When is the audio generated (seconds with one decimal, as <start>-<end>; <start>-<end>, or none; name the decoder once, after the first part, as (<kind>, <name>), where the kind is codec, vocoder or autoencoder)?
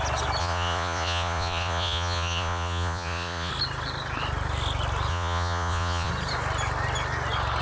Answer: 0.4-3.5 (vocoder, Vocos); 5.1-6.1